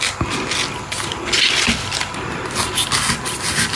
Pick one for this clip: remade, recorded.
recorded